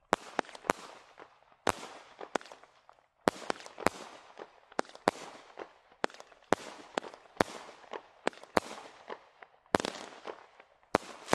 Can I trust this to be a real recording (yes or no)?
yes